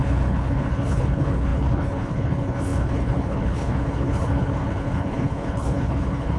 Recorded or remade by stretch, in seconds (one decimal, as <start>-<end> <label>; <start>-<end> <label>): 0.0-6.4 remade